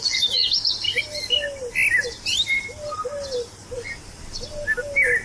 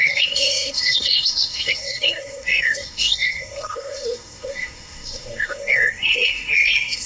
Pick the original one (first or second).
first